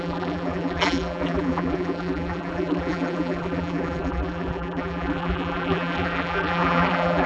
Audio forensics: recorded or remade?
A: remade